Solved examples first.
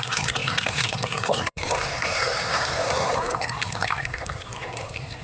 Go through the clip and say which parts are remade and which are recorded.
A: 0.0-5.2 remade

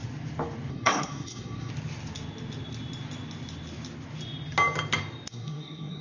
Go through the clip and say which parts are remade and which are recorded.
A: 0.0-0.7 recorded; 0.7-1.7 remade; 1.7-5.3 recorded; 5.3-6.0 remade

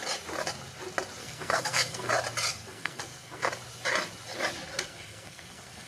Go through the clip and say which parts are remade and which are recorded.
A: 0.0-1.2 recorded; 1.2-2.1 remade; 2.1-2.5 recorded; 2.5-3.5 remade; 3.5-4.7 recorded; 4.7-5.9 remade